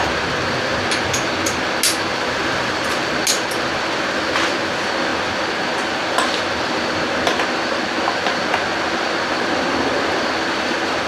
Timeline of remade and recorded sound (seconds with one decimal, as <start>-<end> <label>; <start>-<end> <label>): 0.0-2.1 recorded; 2.1-3.2 remade; 3.2-11.1 recorded